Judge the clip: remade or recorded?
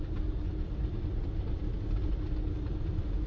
recorded